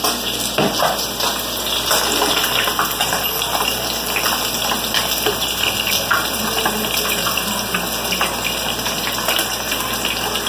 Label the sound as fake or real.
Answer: real